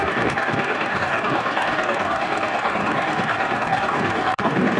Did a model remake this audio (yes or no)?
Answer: yes